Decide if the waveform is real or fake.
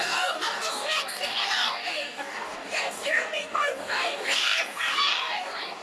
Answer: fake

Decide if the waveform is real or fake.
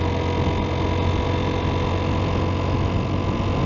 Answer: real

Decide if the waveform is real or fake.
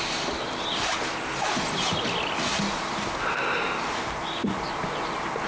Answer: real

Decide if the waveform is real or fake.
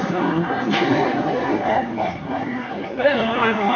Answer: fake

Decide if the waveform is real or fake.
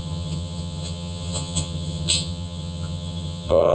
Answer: fake